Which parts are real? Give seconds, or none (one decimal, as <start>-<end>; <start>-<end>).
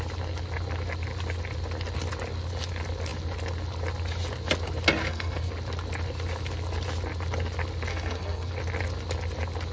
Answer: 0.0-5.0; 5.5-7.9; 8.5-9.7